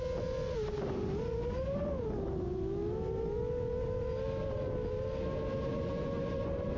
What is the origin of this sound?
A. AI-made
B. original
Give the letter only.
B